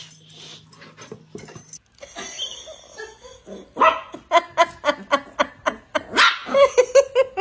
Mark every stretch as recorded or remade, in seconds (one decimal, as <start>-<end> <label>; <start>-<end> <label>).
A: 0.0-7.4 recorded